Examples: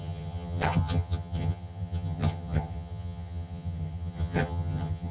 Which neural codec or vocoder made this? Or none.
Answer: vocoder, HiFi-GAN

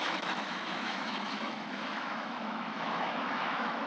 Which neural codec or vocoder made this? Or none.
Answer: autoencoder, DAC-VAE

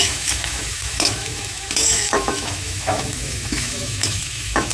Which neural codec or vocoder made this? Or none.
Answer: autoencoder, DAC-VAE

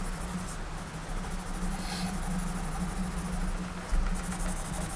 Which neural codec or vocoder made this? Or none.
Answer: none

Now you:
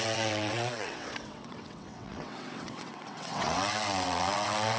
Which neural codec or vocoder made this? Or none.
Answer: vocoder, WaveNeXt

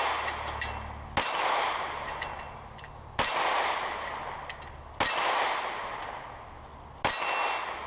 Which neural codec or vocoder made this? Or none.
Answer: none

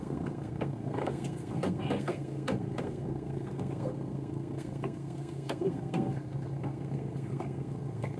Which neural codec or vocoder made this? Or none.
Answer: codec, SNAC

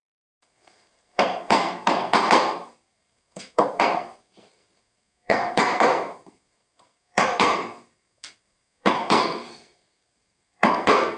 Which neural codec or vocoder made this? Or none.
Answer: codec, SNAC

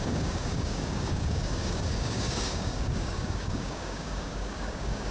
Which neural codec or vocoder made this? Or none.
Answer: codec, DAC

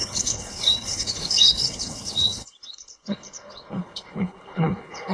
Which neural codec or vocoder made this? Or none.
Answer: codec, HILCodec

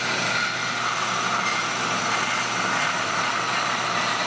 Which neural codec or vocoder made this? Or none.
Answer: vocoder, BigVGAN v2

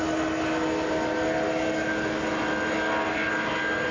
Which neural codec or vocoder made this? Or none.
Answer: none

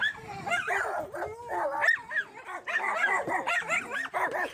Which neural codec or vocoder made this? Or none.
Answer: none